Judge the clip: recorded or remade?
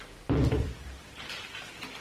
remade